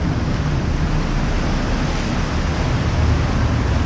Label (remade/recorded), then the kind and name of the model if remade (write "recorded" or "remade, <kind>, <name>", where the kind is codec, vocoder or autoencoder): recorded